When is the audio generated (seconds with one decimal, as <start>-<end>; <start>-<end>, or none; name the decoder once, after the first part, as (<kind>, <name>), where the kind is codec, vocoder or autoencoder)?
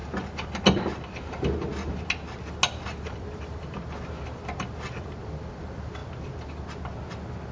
3.0-6.0 (vocoder, BigVGAN v2)